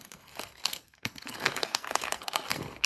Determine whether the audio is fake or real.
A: fake